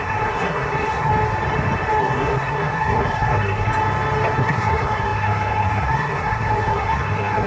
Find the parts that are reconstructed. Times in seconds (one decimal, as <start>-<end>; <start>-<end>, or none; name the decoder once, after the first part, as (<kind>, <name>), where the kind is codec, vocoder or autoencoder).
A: 0.0-1.1 (codec, SNAC); 2.0-3.7; 4.4-7.5